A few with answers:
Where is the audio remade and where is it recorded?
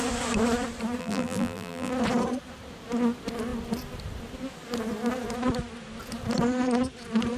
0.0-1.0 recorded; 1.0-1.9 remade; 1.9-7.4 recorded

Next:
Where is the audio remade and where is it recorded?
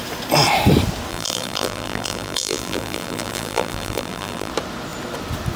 0.0-1.1 recorded; 1.1-4.5 remade; 4.5-5.6 recorded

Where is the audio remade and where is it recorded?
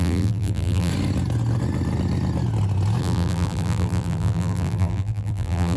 0.0-0.9 remade; 0.9-3.0 recorded; 3.0-5.8 remade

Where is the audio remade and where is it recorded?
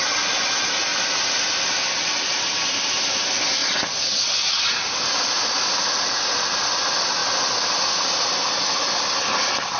0.0-7.2 remade; 7.2-9.0 recorded; 9.0-9.8 remade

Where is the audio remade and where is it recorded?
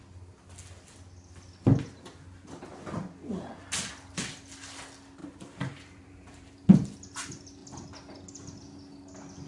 0.0-5.2 recorded; 5.2-6.5 remade; 6.5-9.5 recorded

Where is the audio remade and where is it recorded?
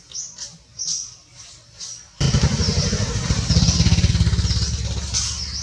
0.0-0.7 recorded; 0.7-4.1 remade; 4.1-5.6 recorded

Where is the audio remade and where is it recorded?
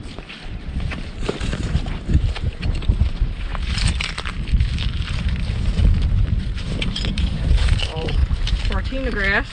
0.0-3.5 remade; 3.5-5.0 recorded; 5.0-5.8 remade; 5.8-6.4 recorded; 6.4-8.2 remade; 8.2-9.5 recorded